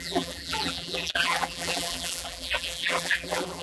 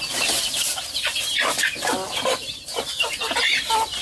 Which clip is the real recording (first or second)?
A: second